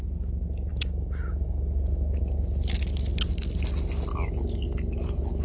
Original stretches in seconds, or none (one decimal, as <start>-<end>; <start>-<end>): 0.0-0.7; 2.2-5.4